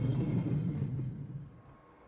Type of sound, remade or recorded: recorded